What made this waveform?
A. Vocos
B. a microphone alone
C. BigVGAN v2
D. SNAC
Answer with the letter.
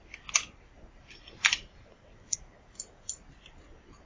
B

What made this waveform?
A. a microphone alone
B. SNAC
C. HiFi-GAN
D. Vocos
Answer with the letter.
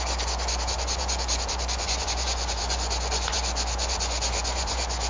D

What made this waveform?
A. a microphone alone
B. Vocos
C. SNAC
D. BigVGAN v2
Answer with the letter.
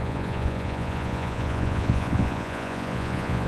B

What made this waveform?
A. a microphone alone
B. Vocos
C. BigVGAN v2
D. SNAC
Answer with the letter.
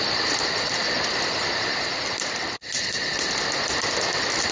A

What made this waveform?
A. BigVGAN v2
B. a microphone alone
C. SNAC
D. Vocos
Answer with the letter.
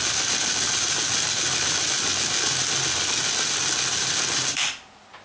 B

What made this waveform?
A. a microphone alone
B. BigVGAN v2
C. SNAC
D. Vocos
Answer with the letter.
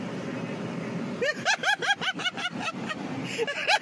A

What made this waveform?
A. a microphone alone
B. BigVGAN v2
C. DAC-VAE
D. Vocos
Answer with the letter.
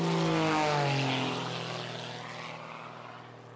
A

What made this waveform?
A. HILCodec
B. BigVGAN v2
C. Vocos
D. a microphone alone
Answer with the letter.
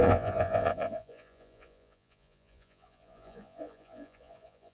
C